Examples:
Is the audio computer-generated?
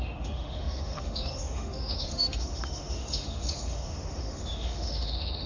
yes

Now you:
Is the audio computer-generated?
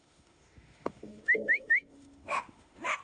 yes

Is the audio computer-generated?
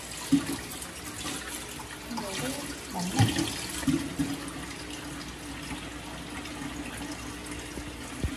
no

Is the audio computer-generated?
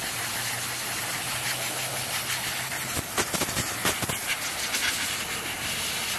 no